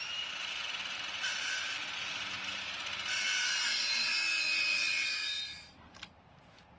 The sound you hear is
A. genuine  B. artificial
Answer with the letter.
B